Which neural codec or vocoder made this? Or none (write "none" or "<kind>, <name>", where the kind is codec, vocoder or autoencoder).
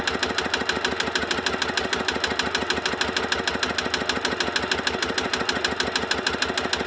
none